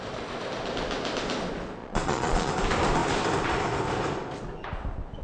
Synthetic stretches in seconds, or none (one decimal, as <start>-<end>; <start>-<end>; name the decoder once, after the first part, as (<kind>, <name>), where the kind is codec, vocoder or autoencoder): 1.8-2.5 (vocoder, Vocos)